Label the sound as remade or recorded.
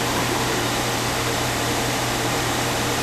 remade